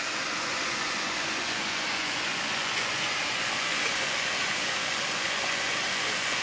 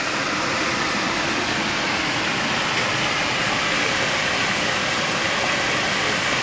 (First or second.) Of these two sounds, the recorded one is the second